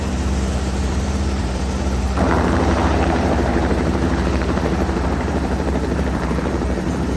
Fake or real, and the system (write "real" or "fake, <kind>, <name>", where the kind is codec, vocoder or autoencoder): fake, vocoder, BigVGAN v2